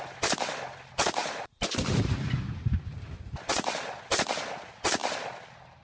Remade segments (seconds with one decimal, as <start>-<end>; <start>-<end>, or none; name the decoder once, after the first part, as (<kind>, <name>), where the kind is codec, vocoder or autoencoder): 1.2-4.0 (vocoder, BigVGAN v2)